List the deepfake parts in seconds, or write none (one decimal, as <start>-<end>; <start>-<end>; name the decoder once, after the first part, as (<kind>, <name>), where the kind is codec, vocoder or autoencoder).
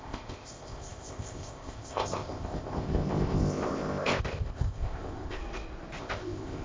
0.0-5.4 (codec, ZipCodec); 6.0-6.6